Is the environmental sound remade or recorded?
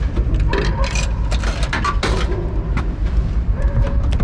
remade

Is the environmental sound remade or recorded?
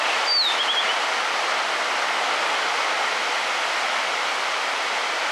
recorded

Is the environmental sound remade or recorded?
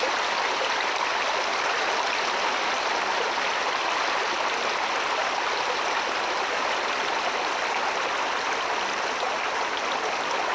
recorded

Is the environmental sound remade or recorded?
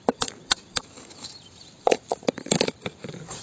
remade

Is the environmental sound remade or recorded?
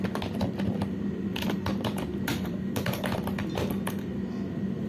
remade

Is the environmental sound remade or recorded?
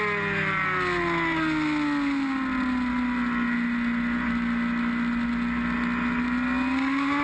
recorded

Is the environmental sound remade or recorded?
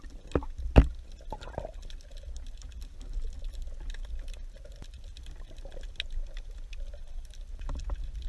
recorded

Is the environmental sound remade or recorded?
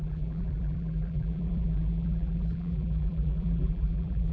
remade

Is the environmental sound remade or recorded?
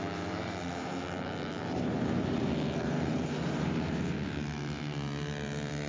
remade